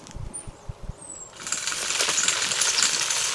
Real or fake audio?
fake